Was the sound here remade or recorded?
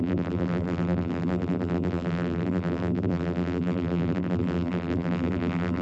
remade